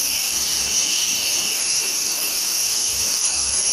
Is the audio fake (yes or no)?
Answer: yes